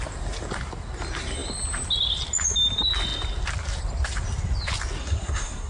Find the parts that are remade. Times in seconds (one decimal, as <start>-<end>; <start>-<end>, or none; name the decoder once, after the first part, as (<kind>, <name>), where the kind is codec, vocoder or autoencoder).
5.0-5.7 (codec, SNAC)